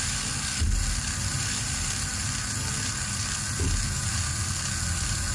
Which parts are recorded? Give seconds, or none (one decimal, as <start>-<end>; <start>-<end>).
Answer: 0.0-5.3